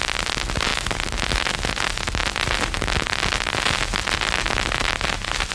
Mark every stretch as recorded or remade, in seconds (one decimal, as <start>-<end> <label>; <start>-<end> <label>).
0.0-5.5 recorded